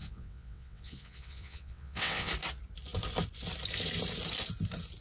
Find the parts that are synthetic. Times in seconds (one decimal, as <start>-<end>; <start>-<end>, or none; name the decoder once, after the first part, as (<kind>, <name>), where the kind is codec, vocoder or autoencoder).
0.0-2.3 (vocoder, WaveNeXt)